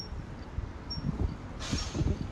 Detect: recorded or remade recorded